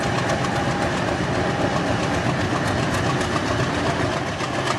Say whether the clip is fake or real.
real